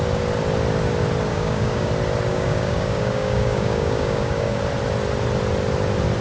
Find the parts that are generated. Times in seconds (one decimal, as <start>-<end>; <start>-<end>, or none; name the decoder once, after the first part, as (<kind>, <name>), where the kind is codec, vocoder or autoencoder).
1.3-1.9 (codec, DAC); 2.3-4.6

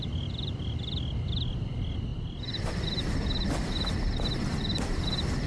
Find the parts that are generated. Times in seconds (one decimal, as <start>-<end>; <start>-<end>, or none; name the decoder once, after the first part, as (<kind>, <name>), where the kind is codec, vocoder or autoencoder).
none

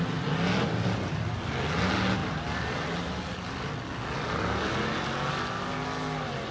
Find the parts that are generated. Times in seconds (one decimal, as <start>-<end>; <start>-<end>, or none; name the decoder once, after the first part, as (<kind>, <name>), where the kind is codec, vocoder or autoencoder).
none

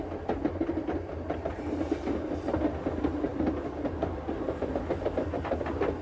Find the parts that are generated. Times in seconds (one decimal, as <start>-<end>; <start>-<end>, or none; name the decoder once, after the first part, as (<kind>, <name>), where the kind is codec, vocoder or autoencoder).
none

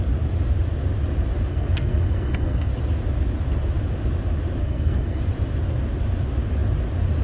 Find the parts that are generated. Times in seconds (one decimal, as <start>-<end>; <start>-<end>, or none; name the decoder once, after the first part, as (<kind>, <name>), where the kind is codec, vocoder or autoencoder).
1.5-2.7 (codec, SNAC); 4.6-5.2

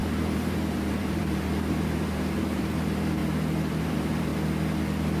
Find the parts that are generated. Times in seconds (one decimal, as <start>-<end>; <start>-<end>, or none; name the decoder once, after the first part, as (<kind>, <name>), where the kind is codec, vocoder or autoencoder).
0.0-3.2 (vocoder, BigVGAN v2); 3.8-4.3